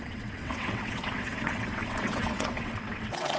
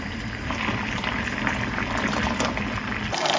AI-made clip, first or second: first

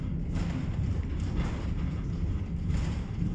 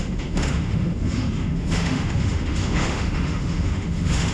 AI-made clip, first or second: second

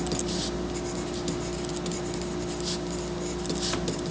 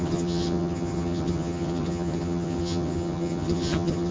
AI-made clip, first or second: second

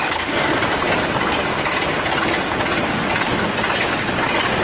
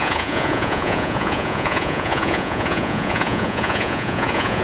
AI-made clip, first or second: second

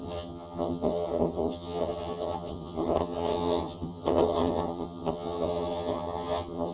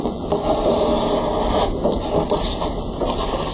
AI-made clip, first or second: first